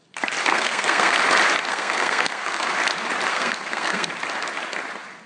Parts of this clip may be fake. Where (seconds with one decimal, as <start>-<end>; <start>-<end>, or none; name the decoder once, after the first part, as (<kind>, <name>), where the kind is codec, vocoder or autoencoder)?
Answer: 0.5-1.2 (codec, SNAC); 1.7-2.7; 3.3-4.1